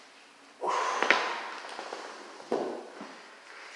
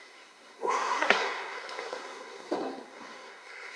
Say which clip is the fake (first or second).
second